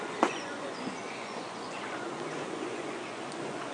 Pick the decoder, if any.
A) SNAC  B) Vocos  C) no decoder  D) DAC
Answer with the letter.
B